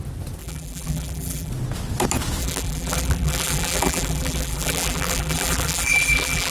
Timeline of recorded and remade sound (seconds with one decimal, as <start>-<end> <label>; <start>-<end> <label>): 0.0-0.4 recorded; 0.4-1.5 remade; 1.5-2.4 recorded; 2.4-6.5 remade